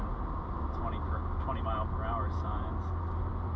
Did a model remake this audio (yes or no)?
no